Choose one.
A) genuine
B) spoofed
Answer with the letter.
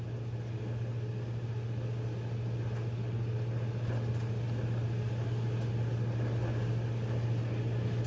A